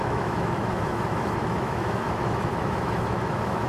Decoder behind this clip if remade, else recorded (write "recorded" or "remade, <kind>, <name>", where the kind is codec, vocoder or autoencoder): remade, autoencoder, DAC-VAE